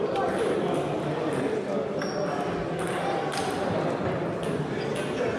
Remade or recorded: recorded